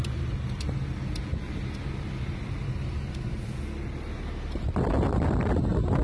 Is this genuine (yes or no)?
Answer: yes